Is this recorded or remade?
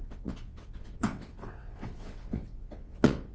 remade